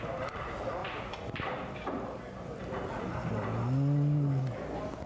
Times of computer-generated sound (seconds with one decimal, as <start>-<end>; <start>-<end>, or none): none